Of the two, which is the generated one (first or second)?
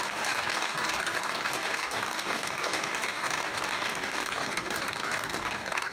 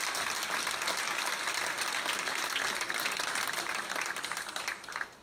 first